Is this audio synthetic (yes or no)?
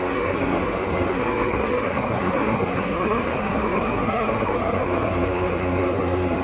yes